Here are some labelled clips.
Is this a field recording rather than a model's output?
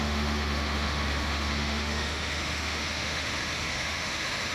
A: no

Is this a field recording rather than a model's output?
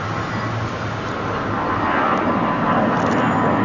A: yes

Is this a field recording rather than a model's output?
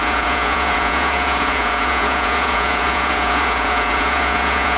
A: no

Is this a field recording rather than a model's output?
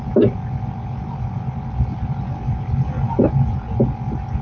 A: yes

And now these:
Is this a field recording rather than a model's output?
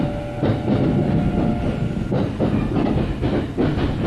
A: yes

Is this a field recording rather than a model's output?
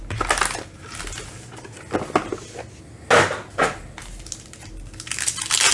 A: yes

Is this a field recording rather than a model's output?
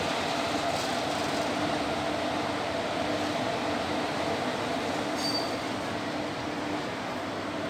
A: yes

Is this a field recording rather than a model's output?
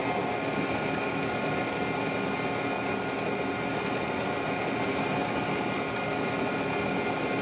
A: yes